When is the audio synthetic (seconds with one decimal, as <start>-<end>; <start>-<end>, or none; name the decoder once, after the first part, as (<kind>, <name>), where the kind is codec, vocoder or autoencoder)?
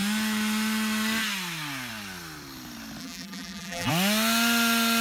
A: 3.0-3.9 (vocoder, BigVGAN v2)